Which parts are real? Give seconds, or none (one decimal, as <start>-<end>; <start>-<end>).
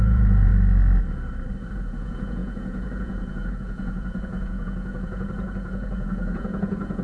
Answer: 0.5-1.7